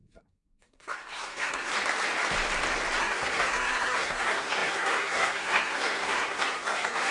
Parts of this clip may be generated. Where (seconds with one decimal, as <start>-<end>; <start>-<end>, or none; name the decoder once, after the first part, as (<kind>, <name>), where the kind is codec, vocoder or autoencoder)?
0.0-1.7 (codec, SNAC); 3.0-7.1